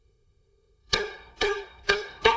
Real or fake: fake